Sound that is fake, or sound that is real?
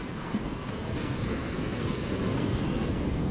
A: fake